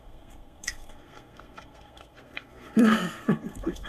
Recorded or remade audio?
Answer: remade